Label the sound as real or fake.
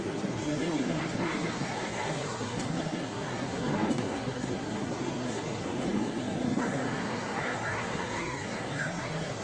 fake